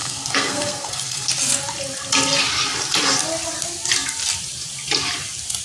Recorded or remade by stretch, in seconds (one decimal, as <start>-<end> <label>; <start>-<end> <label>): 0.0-1.3 remade; 1.3-5.6 recorded